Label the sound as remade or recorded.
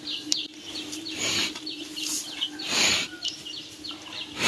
recorded